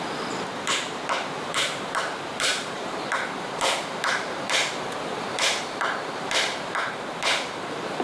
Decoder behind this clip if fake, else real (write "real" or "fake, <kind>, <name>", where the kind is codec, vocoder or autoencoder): fake, vocoder, BigVGAN v2